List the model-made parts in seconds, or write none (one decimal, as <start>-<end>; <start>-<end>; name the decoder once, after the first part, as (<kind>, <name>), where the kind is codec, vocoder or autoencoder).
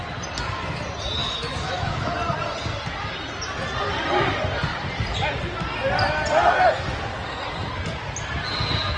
1.2-2.1 (autoencoder, DAC-VAE)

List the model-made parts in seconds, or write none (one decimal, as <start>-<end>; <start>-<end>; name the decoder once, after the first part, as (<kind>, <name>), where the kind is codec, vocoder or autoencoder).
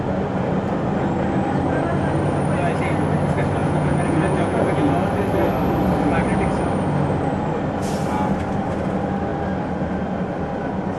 3.6-4.9 (vocoder, Vocos)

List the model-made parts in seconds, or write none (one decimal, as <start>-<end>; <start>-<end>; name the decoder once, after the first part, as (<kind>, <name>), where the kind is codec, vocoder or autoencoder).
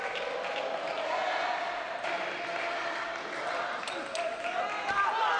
none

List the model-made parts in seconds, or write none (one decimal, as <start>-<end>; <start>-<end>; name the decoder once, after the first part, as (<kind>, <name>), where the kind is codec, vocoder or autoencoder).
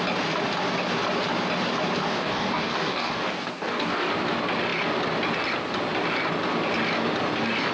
2.0-4.1 (codec, DAC)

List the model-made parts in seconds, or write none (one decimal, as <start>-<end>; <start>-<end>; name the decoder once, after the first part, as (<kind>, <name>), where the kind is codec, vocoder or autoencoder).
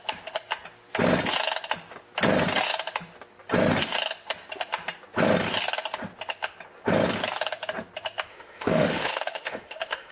8.3-10.1 (autoencoder, DAC-VAE)